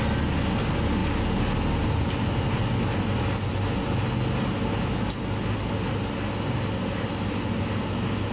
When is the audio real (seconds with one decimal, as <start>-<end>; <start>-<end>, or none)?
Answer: 0.0-8.3